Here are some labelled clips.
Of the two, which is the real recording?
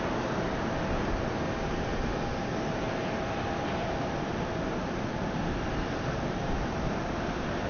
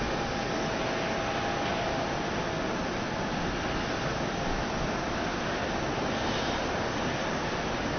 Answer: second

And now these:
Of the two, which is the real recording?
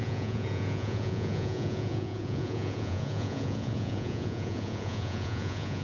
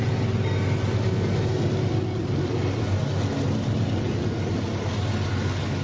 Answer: second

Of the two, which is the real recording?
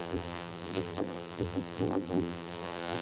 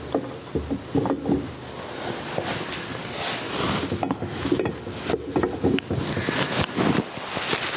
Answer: second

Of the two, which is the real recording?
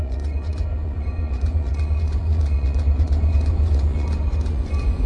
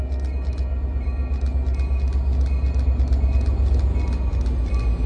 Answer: second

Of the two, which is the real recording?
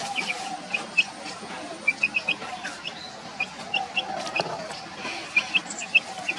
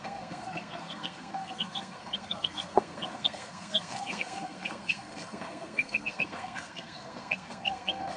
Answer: first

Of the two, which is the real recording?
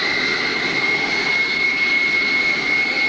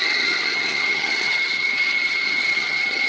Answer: first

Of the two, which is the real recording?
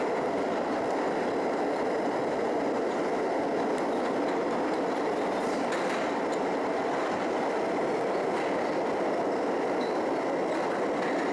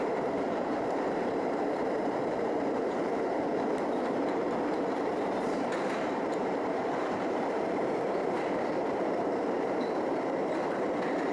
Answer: first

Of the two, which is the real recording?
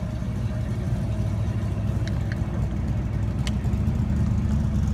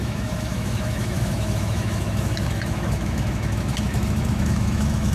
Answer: first